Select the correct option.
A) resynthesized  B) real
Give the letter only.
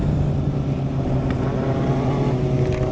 B